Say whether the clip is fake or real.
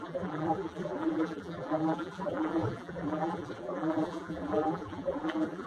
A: fake